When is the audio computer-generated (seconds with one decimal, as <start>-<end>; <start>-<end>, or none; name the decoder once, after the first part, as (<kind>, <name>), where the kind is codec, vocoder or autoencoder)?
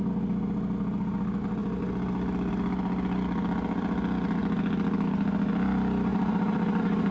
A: 6.1-7.1 (vocoder, BigVGAN v2)